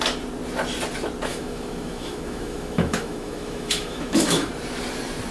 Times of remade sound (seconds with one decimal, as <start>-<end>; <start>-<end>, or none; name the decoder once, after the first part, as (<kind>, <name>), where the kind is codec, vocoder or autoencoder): 1.3-4.5 (autoencoder, DAC-VAE)

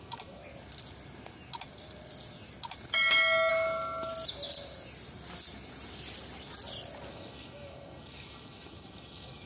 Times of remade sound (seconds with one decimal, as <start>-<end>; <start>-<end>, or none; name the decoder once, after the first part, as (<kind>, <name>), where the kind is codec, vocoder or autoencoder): 0.0-0.4 (autoencoder, DAC-VAE); 3.5-4.1; 7.1-9.5